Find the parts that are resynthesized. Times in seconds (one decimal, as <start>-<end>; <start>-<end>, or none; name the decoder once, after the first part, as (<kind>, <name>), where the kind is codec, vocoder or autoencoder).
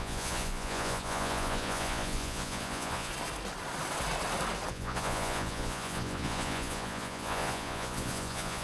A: 0.0-3.1 (vocoder, Vocos); 4.7-8.6